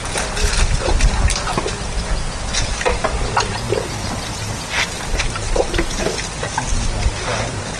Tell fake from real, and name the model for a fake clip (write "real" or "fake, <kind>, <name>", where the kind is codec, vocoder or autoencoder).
real